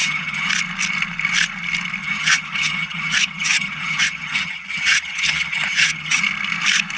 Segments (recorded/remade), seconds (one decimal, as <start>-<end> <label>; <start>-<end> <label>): 0.0-0.5 remade; 0.5-2.0 recorded; 2.0-6.2 remade; 6.2-7.0 recorded